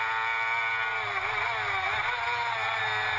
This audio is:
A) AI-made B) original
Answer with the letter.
B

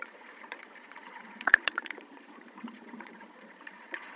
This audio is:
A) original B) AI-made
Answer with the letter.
B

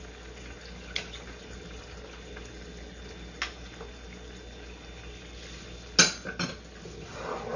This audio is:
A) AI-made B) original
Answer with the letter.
B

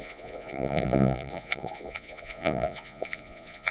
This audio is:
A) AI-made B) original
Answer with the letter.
A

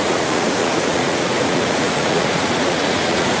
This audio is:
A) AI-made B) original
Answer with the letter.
A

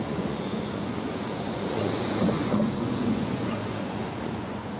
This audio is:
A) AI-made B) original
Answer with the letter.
A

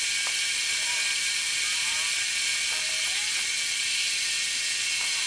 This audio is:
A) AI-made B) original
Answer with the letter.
B